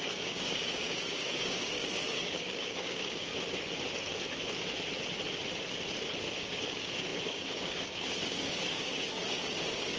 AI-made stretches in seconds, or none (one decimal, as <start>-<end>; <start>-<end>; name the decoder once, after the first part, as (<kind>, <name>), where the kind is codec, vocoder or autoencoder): 0.0-3.3 (codec, DAC); 6.4-10.0